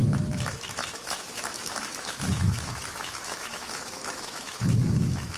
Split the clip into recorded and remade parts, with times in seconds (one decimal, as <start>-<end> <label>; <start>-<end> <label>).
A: 0.0-5.4 remade